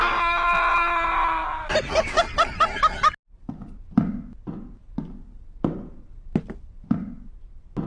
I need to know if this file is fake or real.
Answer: real